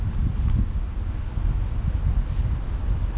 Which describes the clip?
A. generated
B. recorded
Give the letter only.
B